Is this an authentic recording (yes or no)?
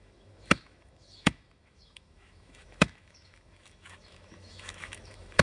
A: no